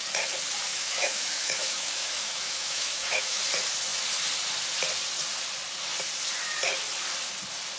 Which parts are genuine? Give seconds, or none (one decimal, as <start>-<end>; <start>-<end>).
0.0-0.7; 3.4-7.8